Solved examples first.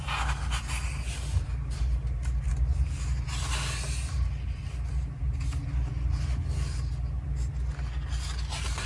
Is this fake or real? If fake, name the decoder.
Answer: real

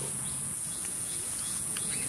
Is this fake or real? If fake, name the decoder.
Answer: fake, vocoder, Vocos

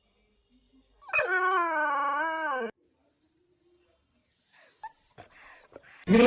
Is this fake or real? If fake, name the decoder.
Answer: real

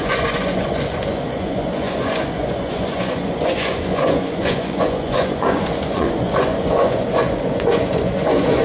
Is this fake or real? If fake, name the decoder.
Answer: fake, vocoder, Vocos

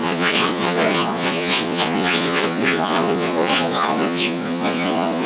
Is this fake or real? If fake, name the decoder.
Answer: fake, vocoder, Vocos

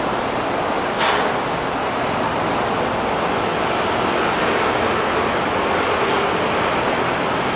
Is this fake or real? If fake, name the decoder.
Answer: real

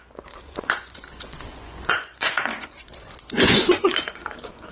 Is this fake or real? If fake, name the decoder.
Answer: fake, vocoder, Vocos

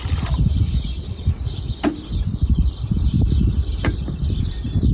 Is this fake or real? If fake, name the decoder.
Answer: real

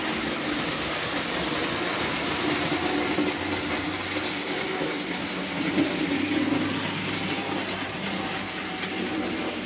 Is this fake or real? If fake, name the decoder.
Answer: real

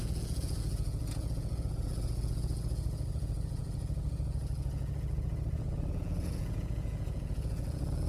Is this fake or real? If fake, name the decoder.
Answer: fake, vocoder, Vocos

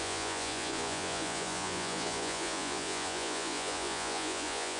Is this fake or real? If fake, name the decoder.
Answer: fake, vocoder, Vocos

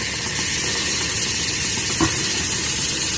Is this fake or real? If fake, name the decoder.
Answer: real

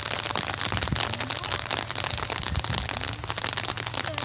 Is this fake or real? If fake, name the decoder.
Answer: real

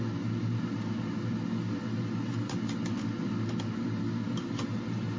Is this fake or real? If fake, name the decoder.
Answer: real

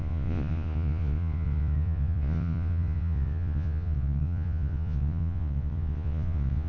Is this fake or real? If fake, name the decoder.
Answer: fake, vocoder, Vocos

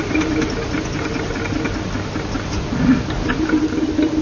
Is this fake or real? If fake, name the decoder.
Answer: real